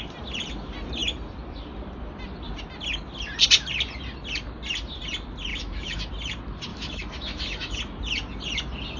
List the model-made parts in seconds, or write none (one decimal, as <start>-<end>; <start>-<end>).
5.5-6.1; 6.7-7.8